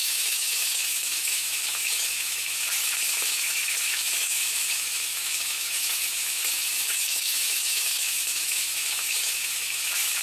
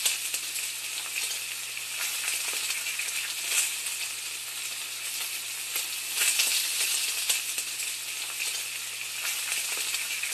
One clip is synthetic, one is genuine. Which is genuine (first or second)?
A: second